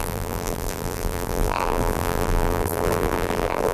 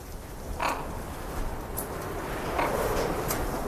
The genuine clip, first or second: second